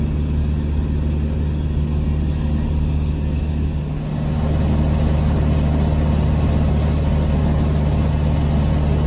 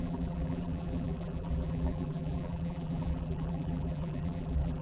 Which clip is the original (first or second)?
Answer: first